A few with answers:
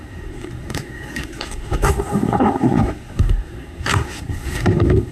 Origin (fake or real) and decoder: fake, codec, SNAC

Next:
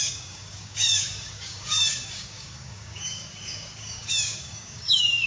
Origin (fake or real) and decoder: fake, codec, DAC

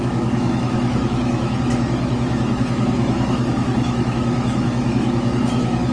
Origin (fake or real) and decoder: fake, autoencoder, DAC-VAE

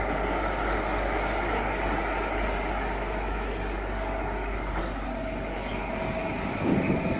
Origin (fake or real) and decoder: fake, codec, DAC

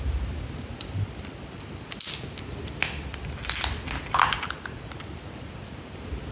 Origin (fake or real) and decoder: real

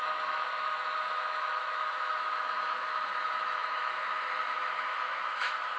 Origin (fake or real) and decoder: fake, autoencoder, DAC-VAE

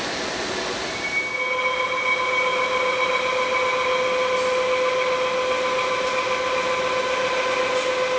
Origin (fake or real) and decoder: real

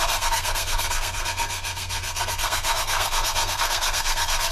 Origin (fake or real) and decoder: fake, codec, SNAC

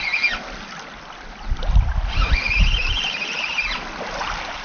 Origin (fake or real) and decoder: real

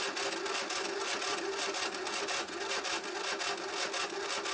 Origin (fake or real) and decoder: real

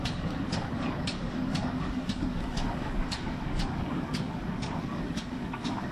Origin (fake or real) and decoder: fake, codec, DAC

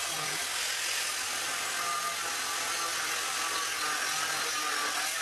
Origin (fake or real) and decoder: real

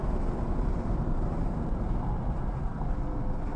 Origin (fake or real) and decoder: real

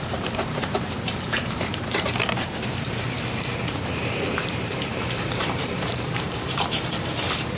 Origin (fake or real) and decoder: fake, vocoder, BigVGAN v2